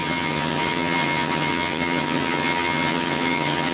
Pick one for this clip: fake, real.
fake